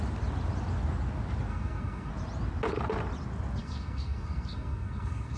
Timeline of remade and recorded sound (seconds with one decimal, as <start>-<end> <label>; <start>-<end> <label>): 0.0-1.5 recorded; 1.5-2.1 remade; 2.1-3.6 recorded; 3.6-5.4 remade